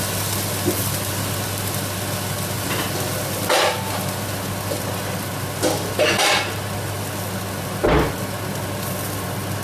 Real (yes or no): yes